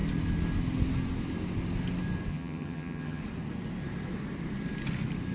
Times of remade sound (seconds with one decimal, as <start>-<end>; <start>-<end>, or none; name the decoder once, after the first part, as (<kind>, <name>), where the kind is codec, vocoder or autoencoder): 2.3-3.2 (vocoder, HiFi-GAN)